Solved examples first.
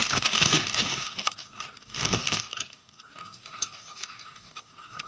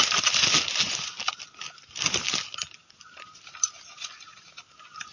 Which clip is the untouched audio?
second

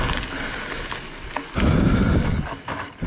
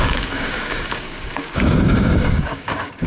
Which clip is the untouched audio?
first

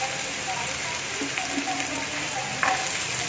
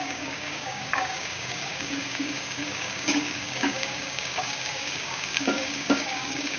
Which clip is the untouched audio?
first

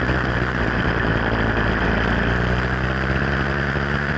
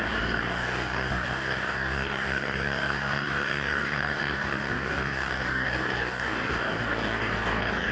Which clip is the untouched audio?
first